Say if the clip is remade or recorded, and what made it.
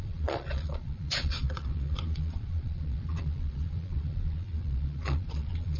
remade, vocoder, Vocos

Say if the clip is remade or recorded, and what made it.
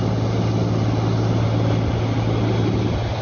recorded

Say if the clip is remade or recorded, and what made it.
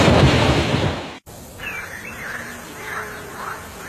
recorded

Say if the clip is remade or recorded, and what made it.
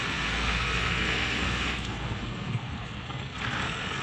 remade, codec, SNAC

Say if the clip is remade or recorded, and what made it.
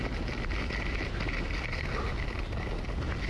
recorded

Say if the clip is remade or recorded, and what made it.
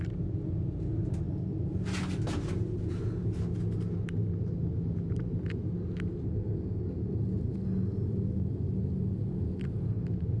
recorded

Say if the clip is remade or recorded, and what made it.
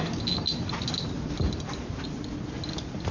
recorded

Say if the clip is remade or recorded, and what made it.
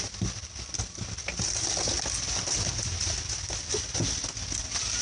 recorded